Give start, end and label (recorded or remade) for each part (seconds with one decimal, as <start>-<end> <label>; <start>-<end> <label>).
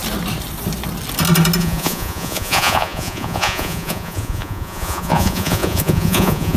0.0-1.6 recorded; 1.6-6.6 remade